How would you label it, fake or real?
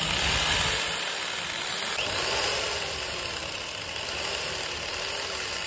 real